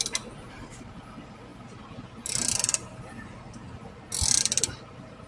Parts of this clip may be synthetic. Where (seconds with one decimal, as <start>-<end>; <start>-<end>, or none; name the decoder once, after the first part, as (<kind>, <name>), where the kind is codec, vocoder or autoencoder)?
none